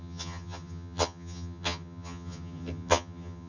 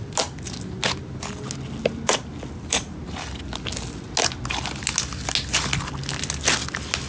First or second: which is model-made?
first